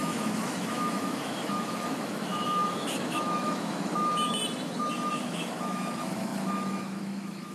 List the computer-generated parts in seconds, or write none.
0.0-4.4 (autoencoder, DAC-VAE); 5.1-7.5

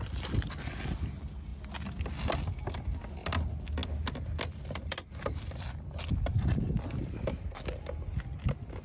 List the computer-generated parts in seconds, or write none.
none

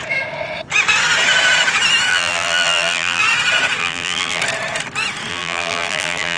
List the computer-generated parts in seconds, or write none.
2.1-3.2 (vocoder, BigVGAN v2); 3.8-4.4; 5.3-6.4